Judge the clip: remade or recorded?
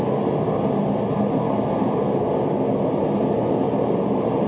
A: recorded